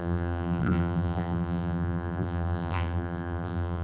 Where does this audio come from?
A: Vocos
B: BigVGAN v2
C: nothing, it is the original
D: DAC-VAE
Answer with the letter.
B